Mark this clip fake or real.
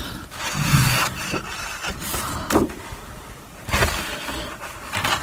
real